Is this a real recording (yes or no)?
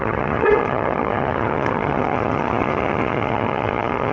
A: no